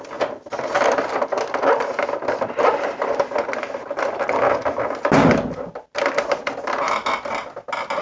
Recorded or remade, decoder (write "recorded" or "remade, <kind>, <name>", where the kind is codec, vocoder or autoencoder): recorded